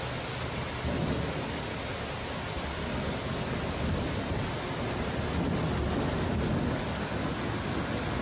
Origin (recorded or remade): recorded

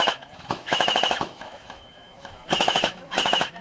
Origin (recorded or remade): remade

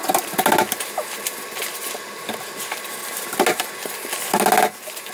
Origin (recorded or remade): recorded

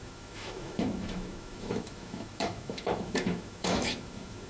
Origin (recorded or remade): remade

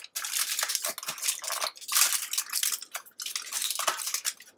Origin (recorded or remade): recorded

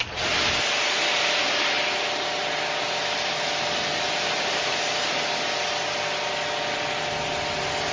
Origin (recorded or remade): recorded